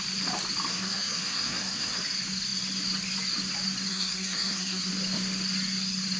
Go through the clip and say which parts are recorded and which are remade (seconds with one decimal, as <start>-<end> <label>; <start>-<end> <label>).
0.0-0.7 recorded; 0.7-2.0 remade; 2.0-3.9 recorded; 3.9-4.9 remade; 4.9-6.2 recorded